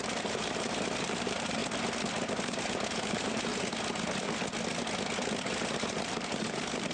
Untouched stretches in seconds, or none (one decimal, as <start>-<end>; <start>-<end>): 1.6-2.3; 3.5-5.4